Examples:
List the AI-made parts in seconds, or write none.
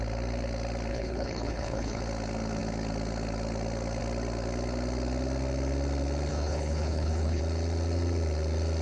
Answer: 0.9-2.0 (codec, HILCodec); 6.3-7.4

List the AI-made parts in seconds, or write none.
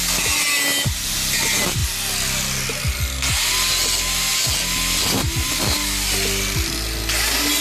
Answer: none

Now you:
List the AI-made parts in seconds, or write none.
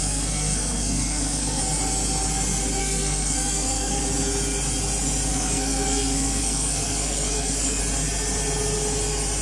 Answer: 0.0-1.6 (codec, SNAC); 2.8-4.0; 5.3-7.8